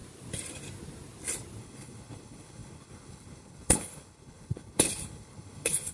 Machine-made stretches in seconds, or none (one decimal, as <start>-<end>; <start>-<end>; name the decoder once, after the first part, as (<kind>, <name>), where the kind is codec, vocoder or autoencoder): 1.6-5.9 (codec, HILCodec)